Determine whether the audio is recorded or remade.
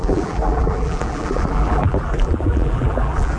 remade